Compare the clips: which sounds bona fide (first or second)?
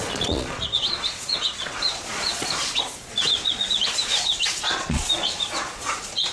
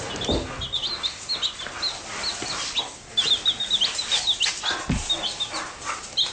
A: second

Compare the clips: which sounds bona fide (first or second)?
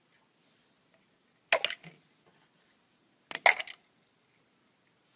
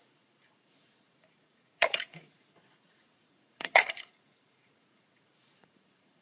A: first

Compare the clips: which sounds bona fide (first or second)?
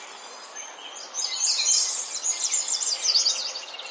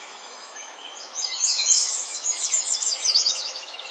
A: first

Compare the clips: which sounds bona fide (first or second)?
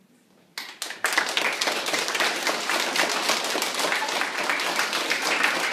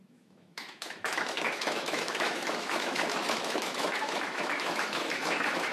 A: first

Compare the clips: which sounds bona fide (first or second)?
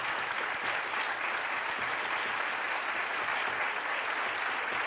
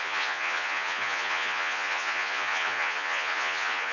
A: first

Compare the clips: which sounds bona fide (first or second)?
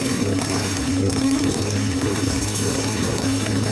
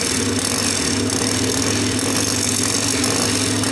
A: second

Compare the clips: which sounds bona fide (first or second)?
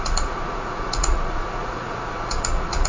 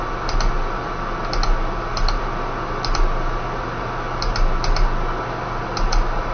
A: second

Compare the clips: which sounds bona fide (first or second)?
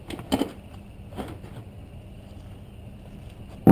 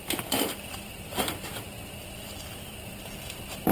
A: first